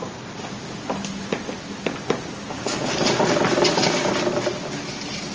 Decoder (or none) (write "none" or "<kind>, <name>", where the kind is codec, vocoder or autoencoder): none